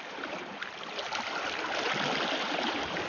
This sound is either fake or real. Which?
real